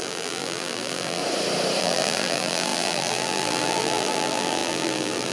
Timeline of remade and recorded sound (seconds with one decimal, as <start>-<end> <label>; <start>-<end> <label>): 0.0-1.2 remade; 1.2-1.8 recorded; 1.8-5.3 remade